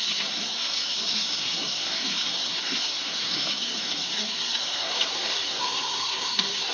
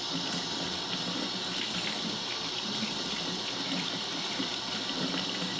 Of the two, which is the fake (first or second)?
first